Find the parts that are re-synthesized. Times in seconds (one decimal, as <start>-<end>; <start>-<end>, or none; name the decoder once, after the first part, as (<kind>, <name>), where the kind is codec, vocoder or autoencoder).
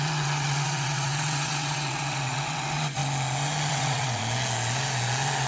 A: 0.0-3.0 (vocoder, WaveNeXt); 3.7-4.2